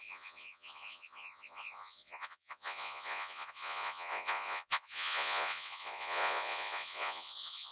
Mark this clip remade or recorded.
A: remade